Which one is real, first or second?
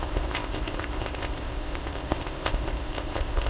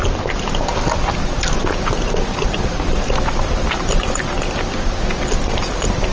second